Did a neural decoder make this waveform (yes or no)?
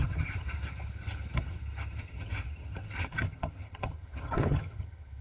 yes